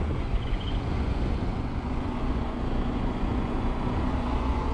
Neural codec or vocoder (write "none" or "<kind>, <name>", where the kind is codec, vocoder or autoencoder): vocoder, Vocos